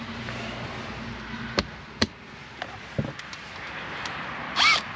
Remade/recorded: recorded